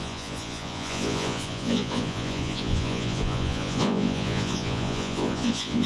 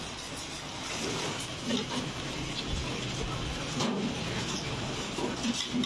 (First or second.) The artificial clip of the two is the first